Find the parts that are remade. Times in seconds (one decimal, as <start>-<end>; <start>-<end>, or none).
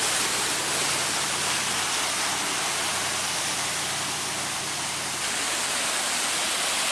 none